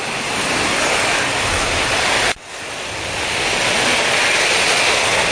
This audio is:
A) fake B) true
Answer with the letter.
B